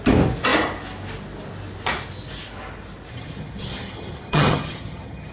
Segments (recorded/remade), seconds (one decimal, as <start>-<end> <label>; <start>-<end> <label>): 0.0-3.1 recorded; 3.1-5.3 remade

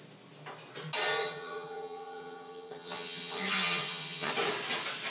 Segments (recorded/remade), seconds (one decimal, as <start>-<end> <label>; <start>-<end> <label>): 0.0-1.2 recorded; 1.2-4.3 remade; 4.3-5.1 recorded

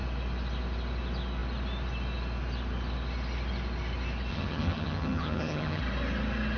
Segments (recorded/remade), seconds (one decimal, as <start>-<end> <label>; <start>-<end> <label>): 0.0-4.3 recorded; 4.3-5.8 remade; 5.8-6.6 recorded

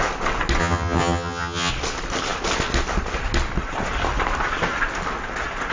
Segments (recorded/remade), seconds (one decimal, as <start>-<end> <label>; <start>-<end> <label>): 0.0-0.6 recorded; 0.6-1.7 remade; 1.7-5.7 recorded

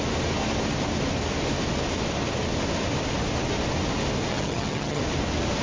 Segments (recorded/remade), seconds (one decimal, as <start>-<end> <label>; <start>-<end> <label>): 0.0-4.3 recorded; 4.3-5.0 remade; 5.0-5.6 recorded

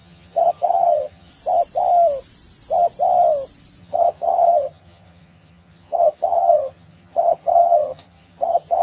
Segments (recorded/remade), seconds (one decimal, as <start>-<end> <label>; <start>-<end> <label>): 0.0-1.3 remade; 1.3-3.8 recorded; 3.8-8.8 remade

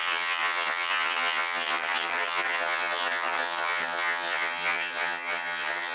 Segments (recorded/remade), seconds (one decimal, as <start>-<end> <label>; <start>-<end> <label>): 0.0-5.9 remade

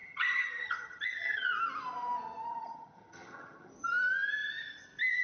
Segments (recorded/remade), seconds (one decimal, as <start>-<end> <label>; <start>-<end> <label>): 0.0-1.5 remade; 1.5-2.5 recorded; 2.5-3.7 remade; 3.7-5.2 recorded